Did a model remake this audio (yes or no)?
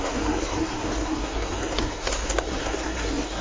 yes